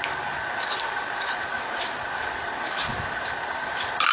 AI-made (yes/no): no